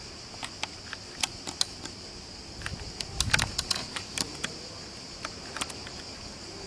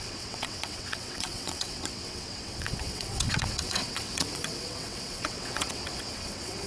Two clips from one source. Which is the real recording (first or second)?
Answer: first